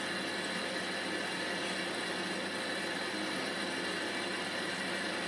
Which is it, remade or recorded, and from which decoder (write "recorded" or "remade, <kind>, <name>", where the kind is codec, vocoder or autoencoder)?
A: recorded